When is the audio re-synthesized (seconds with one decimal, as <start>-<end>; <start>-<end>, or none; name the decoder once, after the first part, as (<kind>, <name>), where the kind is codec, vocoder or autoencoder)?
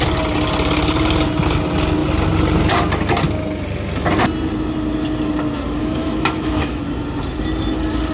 5.8-6.8 (autoencoder, DAC-VAE)